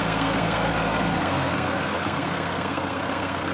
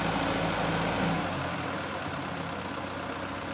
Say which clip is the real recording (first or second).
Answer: second